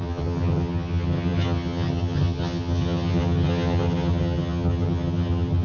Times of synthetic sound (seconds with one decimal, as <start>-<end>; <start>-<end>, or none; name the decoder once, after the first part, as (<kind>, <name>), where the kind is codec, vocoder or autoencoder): 0.0-5.6 (vocoder, HiFi-GAN)